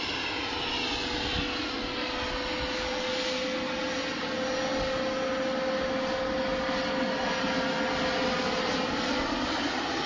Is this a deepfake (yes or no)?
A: no